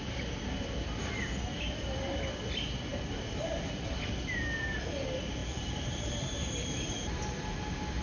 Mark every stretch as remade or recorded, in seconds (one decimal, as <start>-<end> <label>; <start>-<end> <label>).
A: 0.0-5.4 recorded; 5.4-7.6 remade; 7.6-8.0 recorded